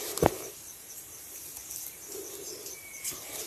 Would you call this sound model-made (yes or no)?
yes